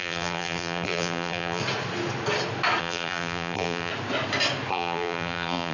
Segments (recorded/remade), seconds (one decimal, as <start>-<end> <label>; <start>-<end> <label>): 0.0-1.6 remade; 1.6-2.8 recorded; 2.8-3.9 remade; 3.9-4.7 recorded; 4.7-5.7 remade